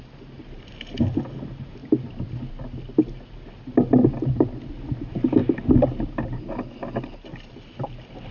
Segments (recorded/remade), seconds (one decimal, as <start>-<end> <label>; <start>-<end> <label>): 0.0-8.3 recorded